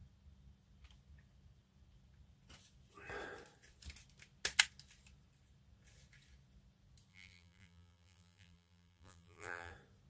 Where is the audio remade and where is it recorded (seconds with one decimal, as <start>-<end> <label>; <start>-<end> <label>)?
0.0-7.1 recorded; 7.1-9.7 remade; 9.7-10.1 recorded